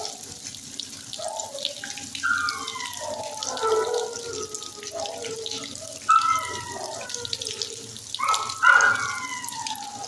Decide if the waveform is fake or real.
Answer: real